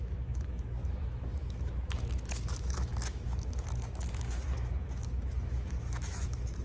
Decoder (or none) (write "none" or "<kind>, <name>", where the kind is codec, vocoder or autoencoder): autoencoder, DAC-VAE